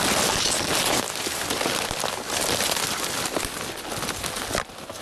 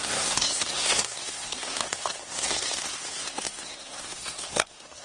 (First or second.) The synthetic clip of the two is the second